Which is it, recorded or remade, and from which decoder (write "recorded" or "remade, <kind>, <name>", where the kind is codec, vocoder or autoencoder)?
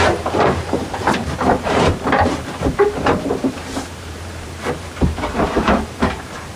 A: remade, vocoder, BigVGAN v2